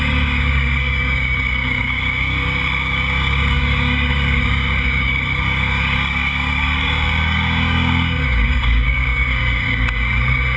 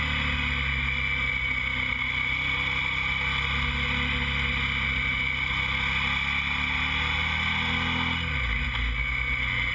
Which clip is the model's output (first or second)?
first